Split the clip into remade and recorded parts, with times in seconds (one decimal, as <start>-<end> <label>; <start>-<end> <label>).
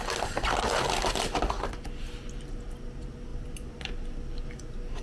0.0-5.0 recorded